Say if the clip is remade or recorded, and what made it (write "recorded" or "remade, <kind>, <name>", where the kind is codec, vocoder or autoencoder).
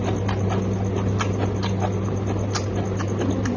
recorded